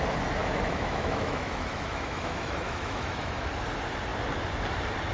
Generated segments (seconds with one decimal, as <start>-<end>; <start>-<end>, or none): 0.4-3.5